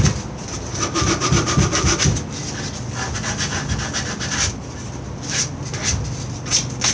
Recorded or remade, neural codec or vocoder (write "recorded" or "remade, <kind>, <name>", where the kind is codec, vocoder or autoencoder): recorded